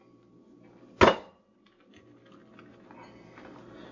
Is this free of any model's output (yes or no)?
yes